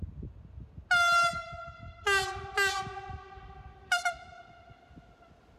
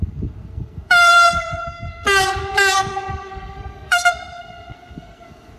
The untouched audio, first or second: first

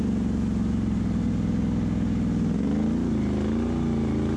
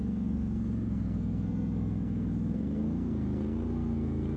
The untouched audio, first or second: first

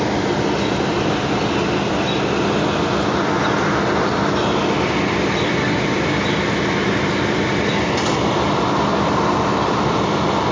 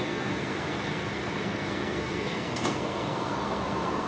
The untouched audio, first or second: first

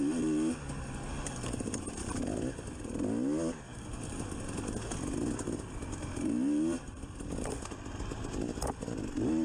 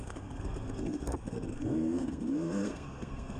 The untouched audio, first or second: first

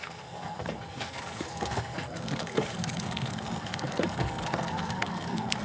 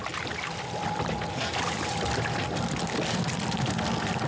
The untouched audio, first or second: second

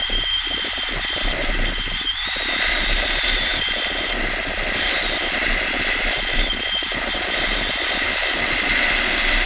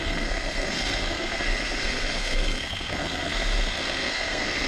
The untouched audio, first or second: first